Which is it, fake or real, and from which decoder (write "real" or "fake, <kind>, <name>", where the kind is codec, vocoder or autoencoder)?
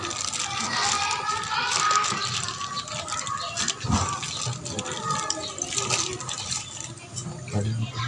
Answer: real